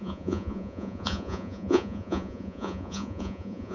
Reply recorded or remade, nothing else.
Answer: remade